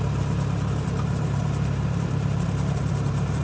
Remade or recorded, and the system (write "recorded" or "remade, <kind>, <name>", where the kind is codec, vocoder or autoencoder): remade, vocoder, BigVGAN v2